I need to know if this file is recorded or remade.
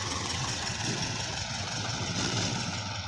remade